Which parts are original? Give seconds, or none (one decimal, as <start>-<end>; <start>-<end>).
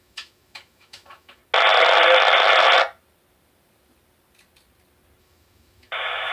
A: 1.4-5.2